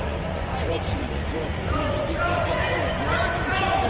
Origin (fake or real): fake